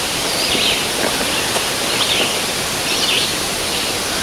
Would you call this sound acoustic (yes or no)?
yes